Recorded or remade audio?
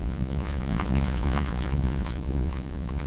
remade